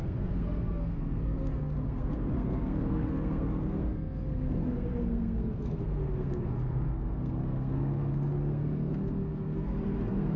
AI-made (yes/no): yes